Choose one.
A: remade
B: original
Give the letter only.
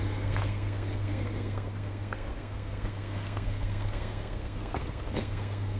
A